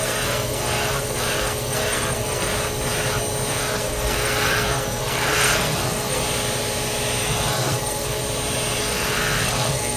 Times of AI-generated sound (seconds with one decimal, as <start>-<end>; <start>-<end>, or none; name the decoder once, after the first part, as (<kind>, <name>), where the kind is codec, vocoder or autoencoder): 0.0-2.5 (codec, SNAC); 3.5-6.2; 7.2-8.2; 8.8-10.0